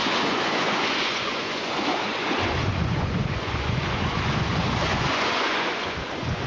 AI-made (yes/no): yes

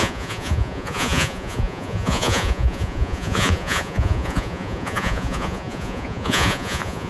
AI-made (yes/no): yes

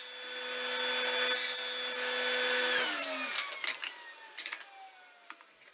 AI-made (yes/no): no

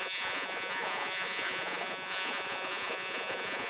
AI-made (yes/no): yes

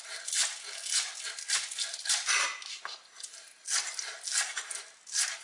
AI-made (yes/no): no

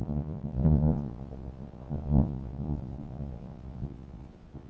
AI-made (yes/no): yes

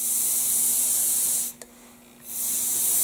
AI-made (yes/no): no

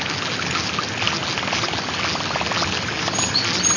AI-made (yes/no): no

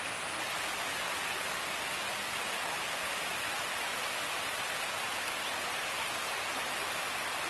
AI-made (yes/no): no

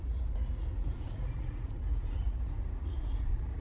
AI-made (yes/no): yes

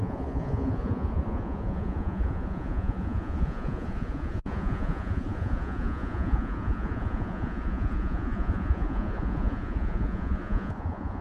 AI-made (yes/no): yes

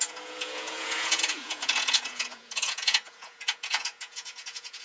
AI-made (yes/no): yes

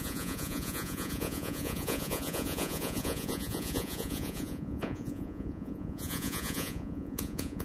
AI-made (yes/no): yes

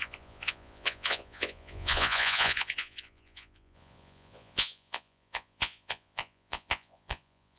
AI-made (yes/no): yes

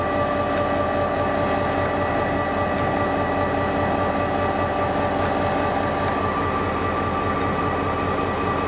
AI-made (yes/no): no